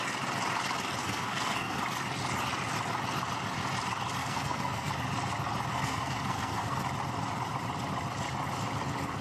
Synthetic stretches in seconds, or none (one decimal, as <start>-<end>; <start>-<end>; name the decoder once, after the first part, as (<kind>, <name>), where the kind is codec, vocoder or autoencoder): 1.0-1.8 (codec, SNAC); 4.2-4.9; 5.7-6.8